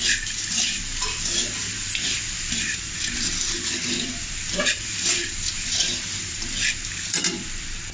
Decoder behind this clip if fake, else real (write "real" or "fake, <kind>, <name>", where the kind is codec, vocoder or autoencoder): fake, vocoder, BigVGAN v2